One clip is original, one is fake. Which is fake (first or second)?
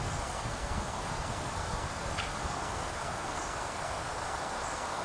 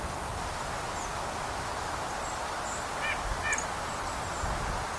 first